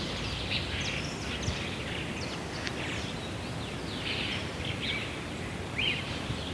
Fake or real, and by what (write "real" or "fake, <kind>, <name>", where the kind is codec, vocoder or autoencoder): real